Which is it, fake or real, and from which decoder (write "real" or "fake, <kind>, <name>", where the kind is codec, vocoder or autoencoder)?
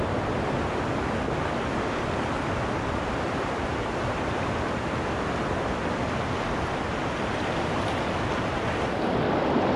real